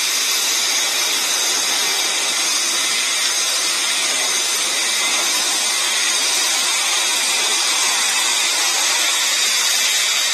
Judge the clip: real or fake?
real